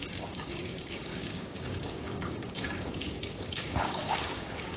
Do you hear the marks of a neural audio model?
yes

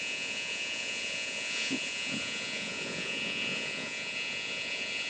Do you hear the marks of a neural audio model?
yes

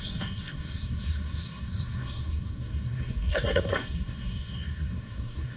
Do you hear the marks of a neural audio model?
yes